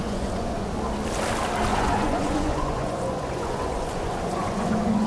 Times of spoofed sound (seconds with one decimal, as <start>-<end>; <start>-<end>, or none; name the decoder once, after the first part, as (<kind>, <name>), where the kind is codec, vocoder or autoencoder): 0.0-0.7 (vocoder, Vocos); 1.7-5.1